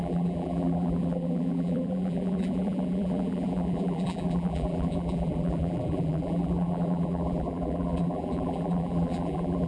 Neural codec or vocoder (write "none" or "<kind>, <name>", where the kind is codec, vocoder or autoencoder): vocoder, BigVGAN v2